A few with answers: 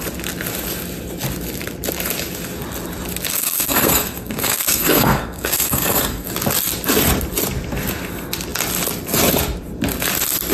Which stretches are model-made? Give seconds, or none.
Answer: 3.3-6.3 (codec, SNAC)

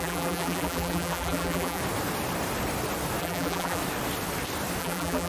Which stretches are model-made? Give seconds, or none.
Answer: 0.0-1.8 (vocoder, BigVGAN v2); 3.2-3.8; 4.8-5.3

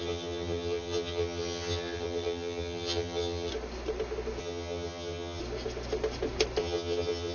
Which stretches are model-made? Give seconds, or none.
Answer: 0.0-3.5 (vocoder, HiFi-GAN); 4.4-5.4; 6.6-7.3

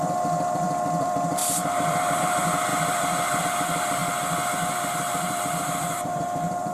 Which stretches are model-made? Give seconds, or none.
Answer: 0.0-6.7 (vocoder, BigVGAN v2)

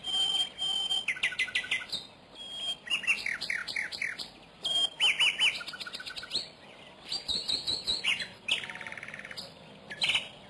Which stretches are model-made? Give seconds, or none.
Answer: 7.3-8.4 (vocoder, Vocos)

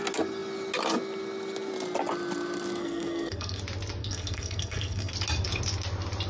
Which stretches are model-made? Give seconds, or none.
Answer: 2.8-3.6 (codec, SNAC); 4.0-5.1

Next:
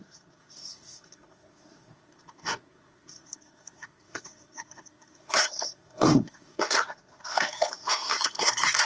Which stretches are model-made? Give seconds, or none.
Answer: 0.0-8.9 (codec, SNAC)

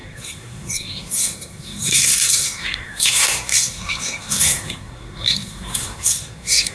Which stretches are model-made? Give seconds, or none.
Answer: 0.0-6.7 (codec, SNAC)